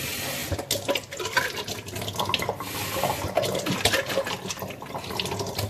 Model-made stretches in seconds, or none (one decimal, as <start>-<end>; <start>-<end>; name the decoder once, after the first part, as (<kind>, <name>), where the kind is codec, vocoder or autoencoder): none